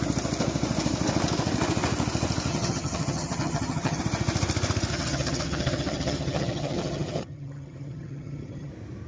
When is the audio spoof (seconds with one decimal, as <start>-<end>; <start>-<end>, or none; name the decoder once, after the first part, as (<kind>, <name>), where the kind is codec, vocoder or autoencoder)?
2.5-4.0 (vocoder, HiFi-GAN); 4.9-8.7